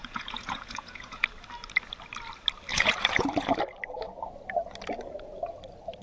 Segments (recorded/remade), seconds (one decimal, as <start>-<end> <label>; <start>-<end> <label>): 0.0-1.2 remade; 1.2-2.7 recorded; 2.7-3.6 remade; 3.6-6.0 recorded